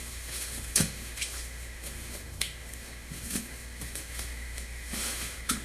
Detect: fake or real fake